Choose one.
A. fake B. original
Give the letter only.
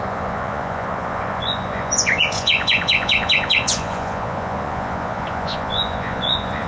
A